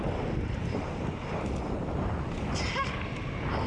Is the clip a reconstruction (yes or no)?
no